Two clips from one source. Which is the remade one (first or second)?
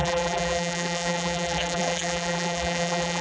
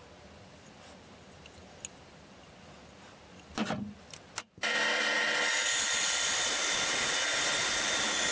first